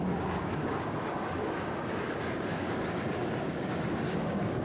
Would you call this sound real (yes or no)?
no